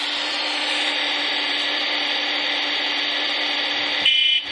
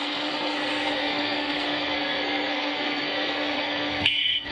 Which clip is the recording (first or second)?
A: first